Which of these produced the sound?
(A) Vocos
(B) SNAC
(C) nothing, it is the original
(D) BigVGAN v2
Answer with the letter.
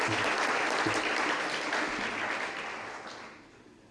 C